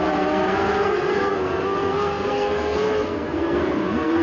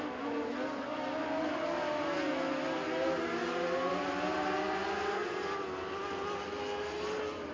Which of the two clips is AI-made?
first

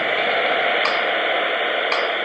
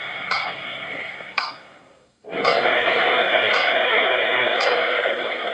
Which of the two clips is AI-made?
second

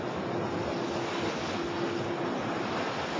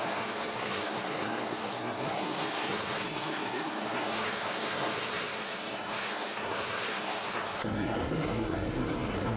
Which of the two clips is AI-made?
second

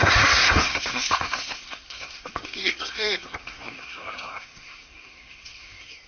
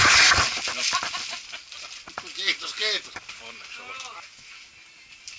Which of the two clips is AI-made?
first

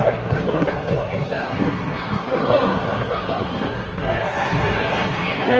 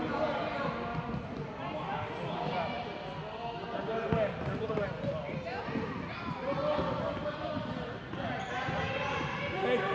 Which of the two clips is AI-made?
first